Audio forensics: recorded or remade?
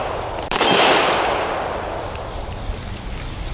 recorded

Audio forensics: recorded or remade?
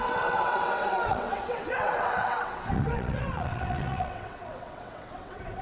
remade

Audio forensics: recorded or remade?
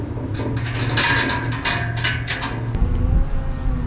recorded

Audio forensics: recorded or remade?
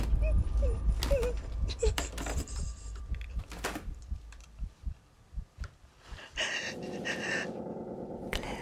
remade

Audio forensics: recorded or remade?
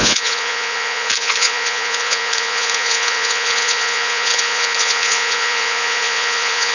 remade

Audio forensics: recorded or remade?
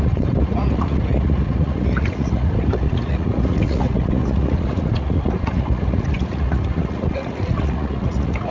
remade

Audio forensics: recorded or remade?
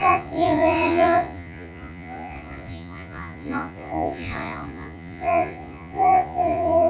remade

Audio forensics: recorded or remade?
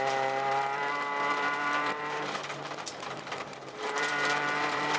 remade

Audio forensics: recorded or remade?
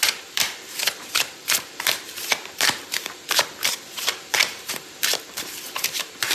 remade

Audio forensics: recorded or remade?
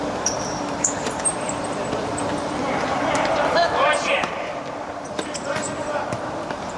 remade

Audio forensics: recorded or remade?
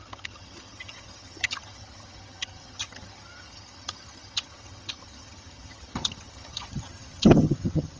remade